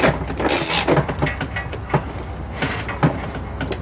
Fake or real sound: real